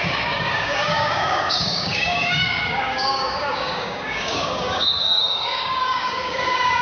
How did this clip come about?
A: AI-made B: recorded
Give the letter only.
A